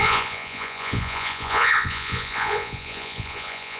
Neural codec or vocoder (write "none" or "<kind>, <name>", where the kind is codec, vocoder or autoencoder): vocoder, Vocos